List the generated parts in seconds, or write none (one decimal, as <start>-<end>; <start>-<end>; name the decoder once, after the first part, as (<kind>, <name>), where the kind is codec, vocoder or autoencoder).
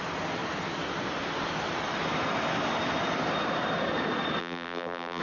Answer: 4.4-5.2 (vocoder, BigVGAN v2)